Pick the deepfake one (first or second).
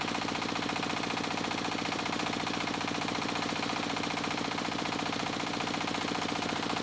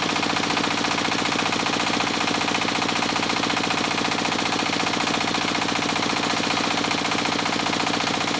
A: first